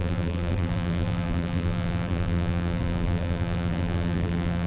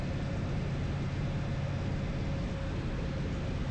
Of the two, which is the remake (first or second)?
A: first